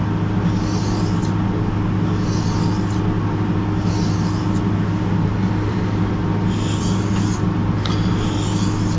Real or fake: real